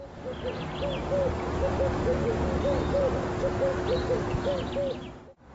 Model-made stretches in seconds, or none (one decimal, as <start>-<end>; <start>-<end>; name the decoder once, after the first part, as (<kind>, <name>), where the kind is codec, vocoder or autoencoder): none